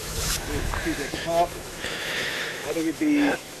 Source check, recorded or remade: remade